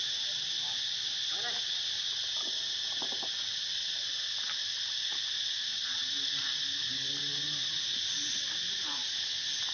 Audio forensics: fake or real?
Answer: real